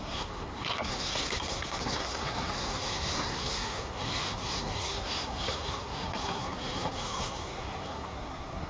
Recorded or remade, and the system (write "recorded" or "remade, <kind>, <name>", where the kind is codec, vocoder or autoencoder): remade, codec, SNAC